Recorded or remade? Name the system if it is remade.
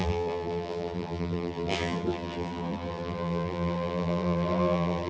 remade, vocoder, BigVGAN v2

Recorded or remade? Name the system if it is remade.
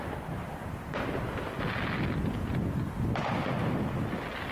recorded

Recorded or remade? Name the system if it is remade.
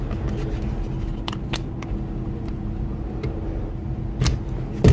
recorded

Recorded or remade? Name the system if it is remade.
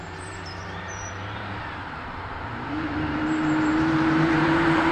remade, vocoder, BigVGAN v2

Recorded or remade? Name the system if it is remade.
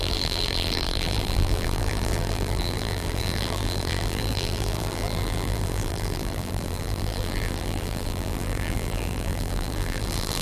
remade, vocoder, BigVGAN v2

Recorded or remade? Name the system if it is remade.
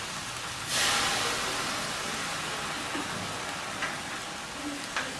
recorded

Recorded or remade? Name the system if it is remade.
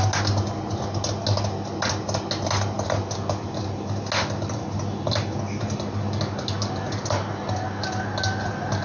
recorded